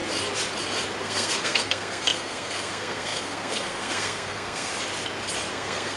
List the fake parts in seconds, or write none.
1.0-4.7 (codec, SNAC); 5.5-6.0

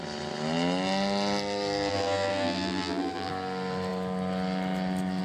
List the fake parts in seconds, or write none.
1.9-3.3 (vocoder, BigVGAN v2)

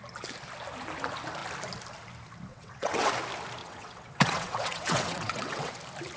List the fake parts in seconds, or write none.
2.5-3.1 (vocoder, WaveNeXt); 3.6-5.7

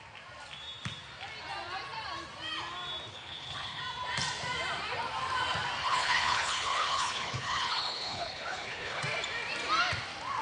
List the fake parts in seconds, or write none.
3.1-3.8 (codec, HILCodec); 5.8-9.0

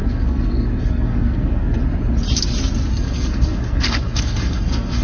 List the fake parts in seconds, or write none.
0.0-1.8 (codec, SNAC); 2.9-5.0

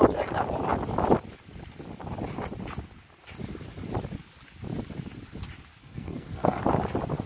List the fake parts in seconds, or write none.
5.8-6.6 (codec, SNAC)

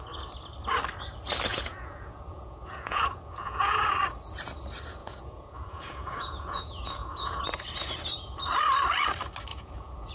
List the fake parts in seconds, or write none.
1.5-3.9 (vocoder, Vocos); 5.0-7.4; 9.5-10.1

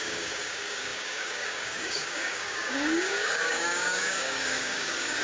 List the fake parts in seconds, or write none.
0.0-5.2 (codec, DAC)